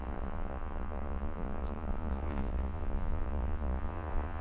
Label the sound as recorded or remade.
remade